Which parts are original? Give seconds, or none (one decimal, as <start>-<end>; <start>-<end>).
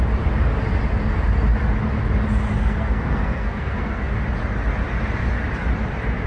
0.0-2.6; 4.2-6.3